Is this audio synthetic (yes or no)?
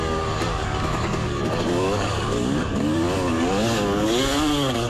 yes